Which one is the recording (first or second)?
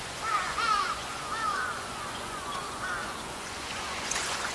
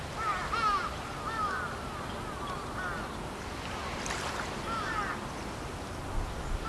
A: second